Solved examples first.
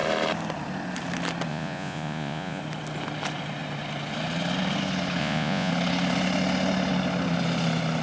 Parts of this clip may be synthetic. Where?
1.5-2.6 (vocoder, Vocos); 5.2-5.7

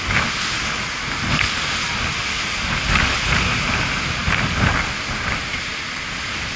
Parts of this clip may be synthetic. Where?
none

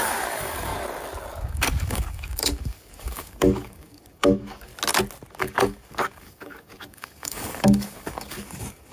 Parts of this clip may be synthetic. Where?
0.0-0.7 (codec, DAC); 1.3-4.7; 5.4-8.9

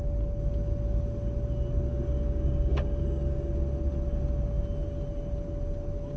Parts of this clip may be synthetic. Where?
1.9-3.5 (codec, DAC)